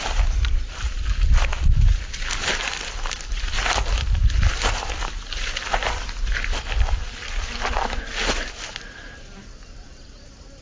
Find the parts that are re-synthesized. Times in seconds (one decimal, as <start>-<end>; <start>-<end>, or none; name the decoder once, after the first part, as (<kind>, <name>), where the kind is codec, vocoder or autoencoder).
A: 0.0-10.6 (vocoder, BigVGAN v2)